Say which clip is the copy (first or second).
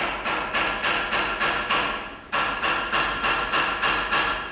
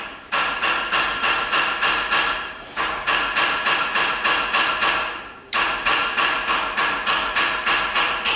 second